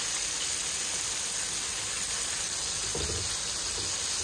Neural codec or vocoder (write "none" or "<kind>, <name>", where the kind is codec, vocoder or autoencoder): none